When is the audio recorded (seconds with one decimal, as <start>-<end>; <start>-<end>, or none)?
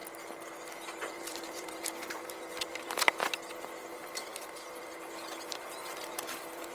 0.0-1.1; 3.2-3.9